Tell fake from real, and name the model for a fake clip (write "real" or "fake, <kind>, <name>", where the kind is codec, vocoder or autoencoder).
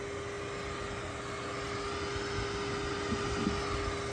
real